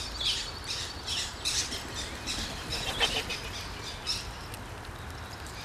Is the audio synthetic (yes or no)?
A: no